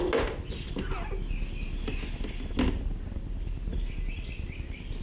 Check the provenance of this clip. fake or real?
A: real